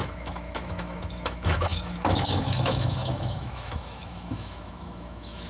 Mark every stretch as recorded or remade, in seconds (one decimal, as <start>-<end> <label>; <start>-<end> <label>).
0.0-5.5 remade